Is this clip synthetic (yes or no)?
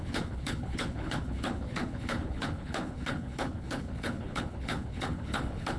yes